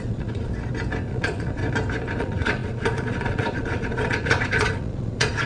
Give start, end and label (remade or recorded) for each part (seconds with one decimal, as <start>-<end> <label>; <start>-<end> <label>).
0.0-0.5 remade; 0.5-1.1 recorded; 1.1-1.6 remade; 1.6-2.2 recorded; 2.2-5.5 remade